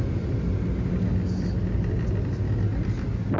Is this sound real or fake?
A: real